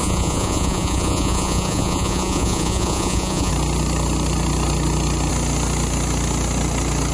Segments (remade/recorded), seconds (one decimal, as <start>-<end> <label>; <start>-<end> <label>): 0.0-3.5 remade; 3.5-7.1 recorded